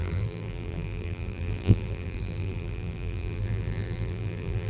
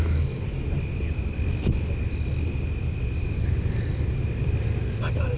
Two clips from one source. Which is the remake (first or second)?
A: first